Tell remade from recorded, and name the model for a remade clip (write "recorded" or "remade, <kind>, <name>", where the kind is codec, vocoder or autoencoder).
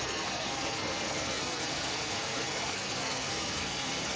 remade, codec, SNAC